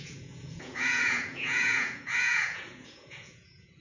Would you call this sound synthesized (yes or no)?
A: yes